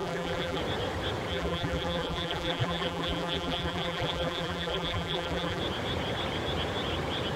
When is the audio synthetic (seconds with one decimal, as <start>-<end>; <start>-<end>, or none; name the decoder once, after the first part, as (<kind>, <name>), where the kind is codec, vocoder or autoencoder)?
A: 0.0-0.6 (vocoder, BigVGAN v2); 1.3-5.6